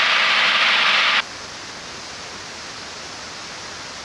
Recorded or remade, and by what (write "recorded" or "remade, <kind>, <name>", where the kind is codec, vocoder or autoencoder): recorded